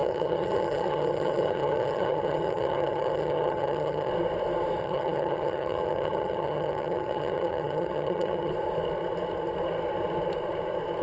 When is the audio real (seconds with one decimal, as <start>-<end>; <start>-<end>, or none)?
4.1-4.8; 8.5-11.0